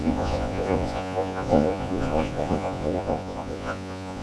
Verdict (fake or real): fake